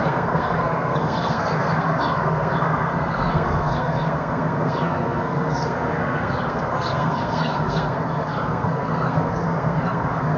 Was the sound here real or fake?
fake